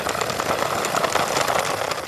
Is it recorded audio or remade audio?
recorded